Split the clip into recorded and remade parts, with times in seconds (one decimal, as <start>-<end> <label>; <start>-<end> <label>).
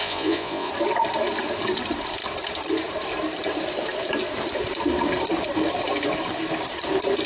0.0-0.7 remade; 0.7-7.3 recorded